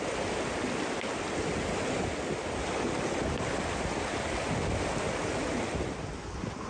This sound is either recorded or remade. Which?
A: recorded